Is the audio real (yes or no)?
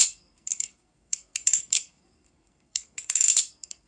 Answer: no